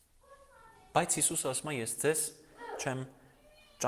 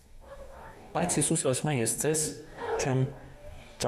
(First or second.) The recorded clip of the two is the first